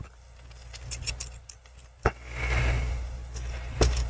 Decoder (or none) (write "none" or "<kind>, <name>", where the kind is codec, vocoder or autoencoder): none